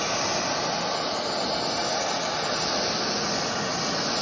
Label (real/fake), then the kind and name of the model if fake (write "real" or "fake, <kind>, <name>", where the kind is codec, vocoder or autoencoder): real